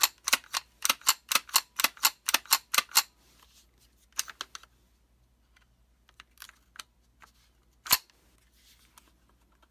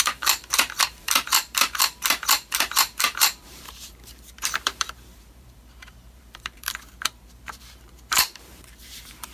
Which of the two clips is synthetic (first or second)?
second